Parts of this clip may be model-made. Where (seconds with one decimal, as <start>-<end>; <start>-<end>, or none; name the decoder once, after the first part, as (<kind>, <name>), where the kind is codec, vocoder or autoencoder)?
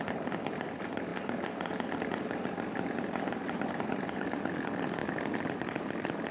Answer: 0.0-1.1 (vocoder, BigVGAN v2); 3.7-5.0; 5.6-6.3